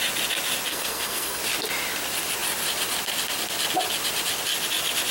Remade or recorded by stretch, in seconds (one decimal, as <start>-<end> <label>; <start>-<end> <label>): 0.0-0.7 recorded; 0.7-1.4 remade; 1.4-5.1 recorded